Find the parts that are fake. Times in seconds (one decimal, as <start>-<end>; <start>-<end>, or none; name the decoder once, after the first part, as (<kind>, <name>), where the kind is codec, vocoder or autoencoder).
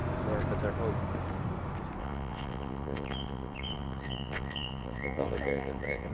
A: 2.0-6.1 (vocoder, WaveNeXt)